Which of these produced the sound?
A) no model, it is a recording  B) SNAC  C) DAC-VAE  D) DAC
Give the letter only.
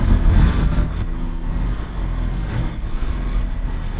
B